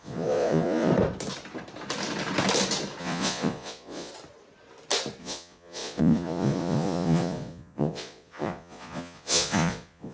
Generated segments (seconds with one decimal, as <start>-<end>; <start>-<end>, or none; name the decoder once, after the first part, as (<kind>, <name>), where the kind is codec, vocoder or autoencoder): 0.0-0.9 (vocoder, Vocos); 3.0-4.1; 5.2-10.1